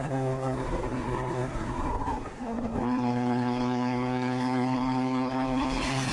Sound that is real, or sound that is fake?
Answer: fake